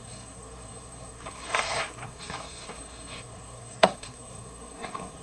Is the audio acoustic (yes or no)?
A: no